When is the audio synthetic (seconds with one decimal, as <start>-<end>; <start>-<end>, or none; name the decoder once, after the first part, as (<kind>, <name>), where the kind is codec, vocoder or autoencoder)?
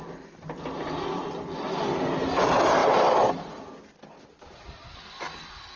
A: none